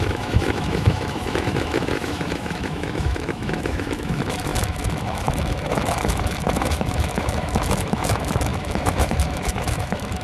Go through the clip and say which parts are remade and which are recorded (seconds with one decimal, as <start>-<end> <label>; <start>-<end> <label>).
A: 0.0-10.2 remade